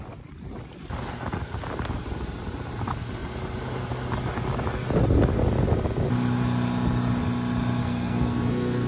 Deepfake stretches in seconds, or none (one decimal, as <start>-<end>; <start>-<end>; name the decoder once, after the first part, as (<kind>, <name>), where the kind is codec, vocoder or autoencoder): 7.8-8.9 (codec, SNAC)